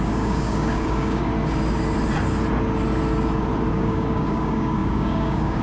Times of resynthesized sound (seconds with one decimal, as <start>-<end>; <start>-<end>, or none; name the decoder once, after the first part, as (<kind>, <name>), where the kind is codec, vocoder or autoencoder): 0.0-1.3 (codec, DAC); 3.7-5.6